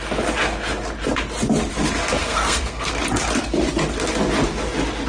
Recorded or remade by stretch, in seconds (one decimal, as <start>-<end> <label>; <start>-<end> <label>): 0.0-2.2 recorded; 2.2-2.9 remade; 2.9-5.1 recorded